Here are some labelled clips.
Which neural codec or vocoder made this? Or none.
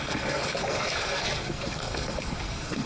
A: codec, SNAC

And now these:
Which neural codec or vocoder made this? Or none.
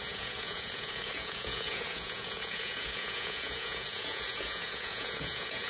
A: vocoder, Vocos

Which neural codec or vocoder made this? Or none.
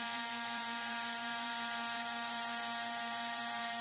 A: vocoder, BigVGAN v2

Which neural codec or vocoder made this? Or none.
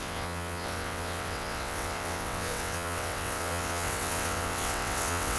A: vocoder, WaveNeXt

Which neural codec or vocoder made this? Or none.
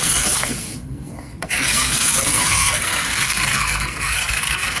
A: codec, SNAC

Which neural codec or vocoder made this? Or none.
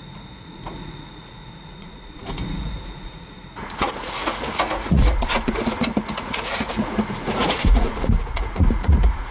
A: vocoder, Vocos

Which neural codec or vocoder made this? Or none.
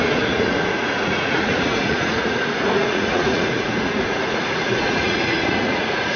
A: vocoder, Vocos